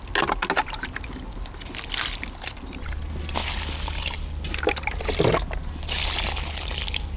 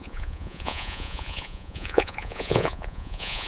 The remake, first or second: second